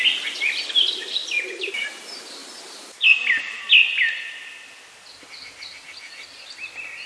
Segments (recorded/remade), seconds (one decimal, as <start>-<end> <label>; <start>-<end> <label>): 0.0-7.1 recorded